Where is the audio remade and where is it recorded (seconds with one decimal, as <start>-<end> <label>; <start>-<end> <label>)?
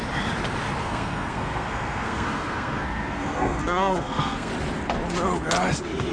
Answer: 0.0-0.8 recorded; 0.8-4.5 remade; 4.5-6.1 recorded